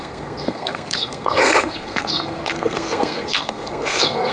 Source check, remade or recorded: remade